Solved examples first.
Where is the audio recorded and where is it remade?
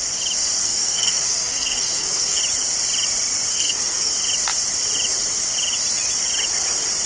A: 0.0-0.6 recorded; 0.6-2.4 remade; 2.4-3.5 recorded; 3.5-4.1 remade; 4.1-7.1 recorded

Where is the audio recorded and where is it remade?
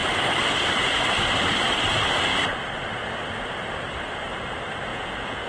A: 0.0-4.9 recorded; 4.9-5.5 remade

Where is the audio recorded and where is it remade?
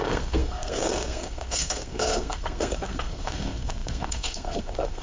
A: 0.0-5.0 remade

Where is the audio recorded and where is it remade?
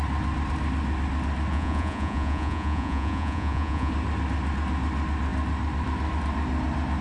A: 0.0-1.5 recorded; 1.5-3.9 remade; 3.9-7.0 recorded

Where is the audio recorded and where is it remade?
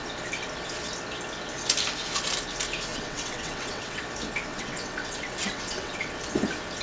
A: 0.0-2.9 recorded; 2.9-4.0 remade; 4.0-4.5 recorded; 4.5-6.1 remade; 6.1-6.8 recorded